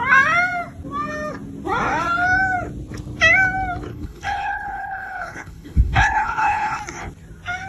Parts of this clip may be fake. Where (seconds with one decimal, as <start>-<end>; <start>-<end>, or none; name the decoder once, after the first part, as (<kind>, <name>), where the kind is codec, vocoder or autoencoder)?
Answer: 3.9-6.8 (codec, HILCodec)